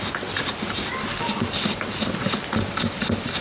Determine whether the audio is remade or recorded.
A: recorded